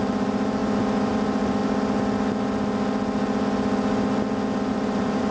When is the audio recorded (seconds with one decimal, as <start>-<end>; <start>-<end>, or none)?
0.6-1.1; 1.6-4.7